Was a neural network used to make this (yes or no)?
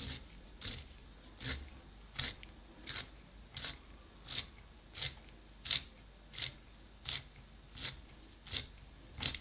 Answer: no